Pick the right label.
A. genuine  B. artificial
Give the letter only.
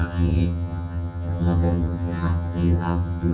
B